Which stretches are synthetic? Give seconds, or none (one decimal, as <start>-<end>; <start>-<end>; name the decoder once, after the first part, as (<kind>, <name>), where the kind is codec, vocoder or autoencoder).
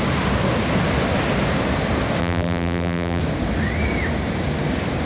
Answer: 2.2-3.2 (vocoder, BigVGAN v2)